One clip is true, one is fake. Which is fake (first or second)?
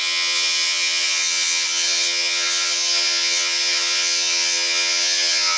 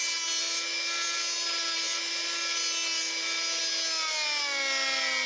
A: first